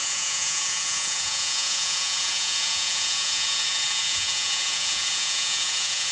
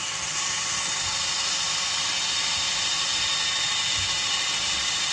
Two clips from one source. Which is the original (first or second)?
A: second